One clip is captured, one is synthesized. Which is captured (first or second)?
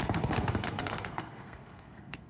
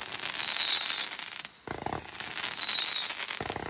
second